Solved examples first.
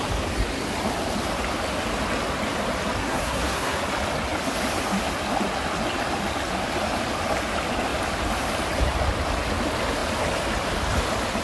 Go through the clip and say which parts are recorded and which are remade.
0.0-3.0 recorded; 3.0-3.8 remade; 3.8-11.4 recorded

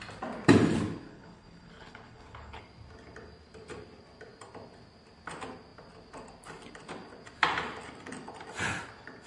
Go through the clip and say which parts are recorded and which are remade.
0.0-1.1 recorded; 1.1-2.6 remade; 2.6-9.3 recorded

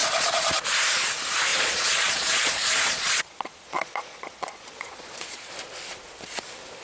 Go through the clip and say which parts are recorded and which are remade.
0.0-0.6 remade; 0.6-1.5 recorded; 1.5-5.5 remade; 5.5-6.8 recorded

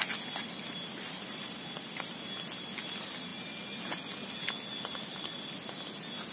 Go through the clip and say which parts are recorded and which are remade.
0.0-6.3 recorded

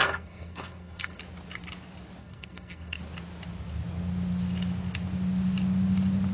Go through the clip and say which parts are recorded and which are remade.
0.0-1.2 remade; 1.2-2.2 recorded; 2.2-3.0 remade; 3.0-6.3 recorded

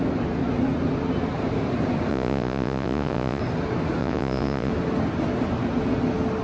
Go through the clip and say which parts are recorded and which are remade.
0.0-2.1 recorded; 2.1-3.4 remade; 3.4-4.0 recorded; 4.0-4.7 remade; 4.7-6.4 recorded

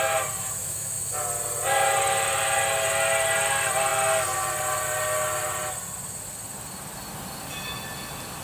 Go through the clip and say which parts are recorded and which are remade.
0.0-0.6 recorded; 0.6-1.1 remade; 1.1-8.4 recorded

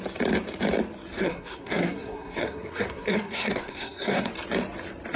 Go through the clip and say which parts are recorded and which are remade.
0.0-1.2 recorded; 1.2-4.3 remade; 4.3-5.2 recorded